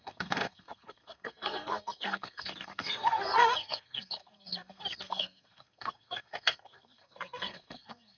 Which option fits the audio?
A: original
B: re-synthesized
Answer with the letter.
B